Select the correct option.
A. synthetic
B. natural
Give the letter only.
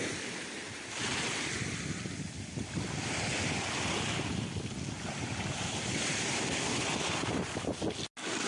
B